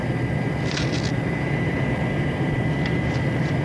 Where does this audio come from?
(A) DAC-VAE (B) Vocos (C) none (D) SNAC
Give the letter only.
C